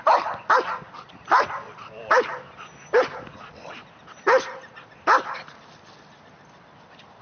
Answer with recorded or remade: recorded